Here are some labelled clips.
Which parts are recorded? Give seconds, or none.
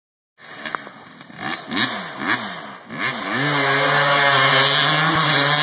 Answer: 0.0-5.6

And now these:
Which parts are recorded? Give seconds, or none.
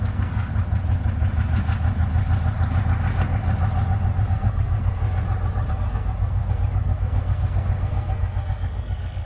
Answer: 0.5-4.3; 5.0-5.7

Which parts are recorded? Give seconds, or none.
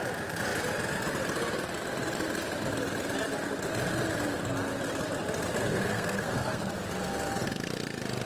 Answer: 0.0-5.6; 6.7-8.3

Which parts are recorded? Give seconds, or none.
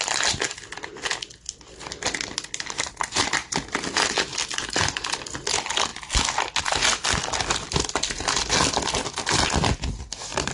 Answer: 0.0-4.3; 5.0-10.5